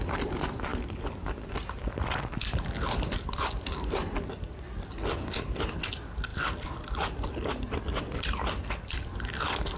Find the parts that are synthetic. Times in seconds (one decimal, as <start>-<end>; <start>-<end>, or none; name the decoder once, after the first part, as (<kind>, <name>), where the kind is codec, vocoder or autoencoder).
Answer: none